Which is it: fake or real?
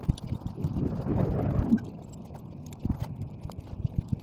real